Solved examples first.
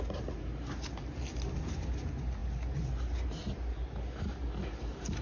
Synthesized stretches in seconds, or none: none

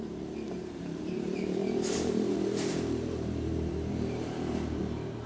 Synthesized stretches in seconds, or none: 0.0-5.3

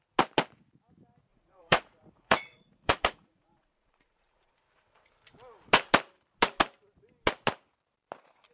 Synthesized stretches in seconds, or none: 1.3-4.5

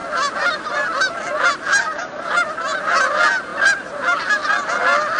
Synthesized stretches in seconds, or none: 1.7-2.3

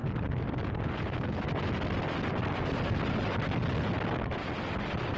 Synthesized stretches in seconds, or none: none

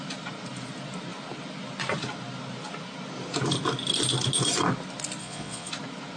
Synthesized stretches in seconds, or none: 5.2-5.7

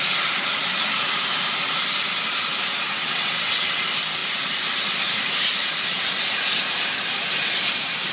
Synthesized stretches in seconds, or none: 2.7-3.8

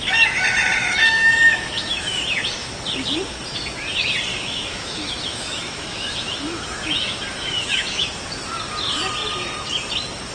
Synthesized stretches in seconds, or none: 0.8-2.2; 4.3-8.1